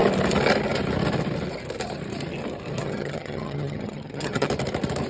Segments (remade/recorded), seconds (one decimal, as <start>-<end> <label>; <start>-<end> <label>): 0.0-2.8 recorded; 2.8-4.5 remade; 4.5-5.1 recorded